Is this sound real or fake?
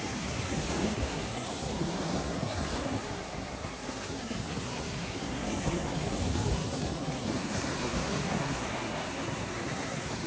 fake